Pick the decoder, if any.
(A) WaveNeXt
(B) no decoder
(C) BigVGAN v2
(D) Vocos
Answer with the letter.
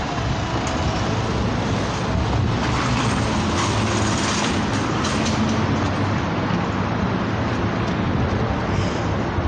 B